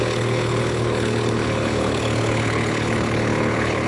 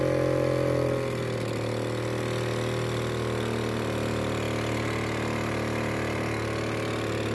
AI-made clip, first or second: first